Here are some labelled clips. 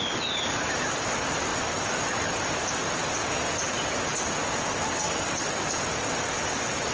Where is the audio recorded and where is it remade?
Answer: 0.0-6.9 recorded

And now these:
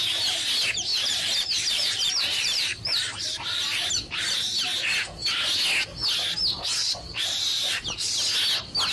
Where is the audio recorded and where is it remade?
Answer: 0.0-0.9 recorded; 0.9-4.4 remade; 4.4-6.8 recorded; 6.8-8.1 remade; 8.1-8.9 recorded

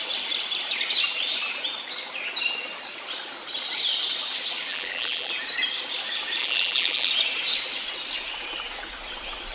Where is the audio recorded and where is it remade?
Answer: 0.0-4.7 recorded; 4.7-5.3 remade; 5.3-6.4 recorded; 6.4-7.1 remade; 7.1-9.5 recorded

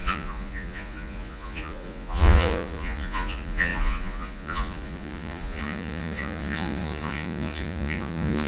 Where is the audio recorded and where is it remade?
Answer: 0.0-8.5 remade

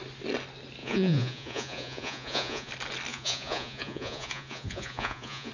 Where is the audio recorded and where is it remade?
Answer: 0.0-0.8 recorded; 0.8-2.7 remade; 2.7-3.1 recorded; 3.1-5.5 remade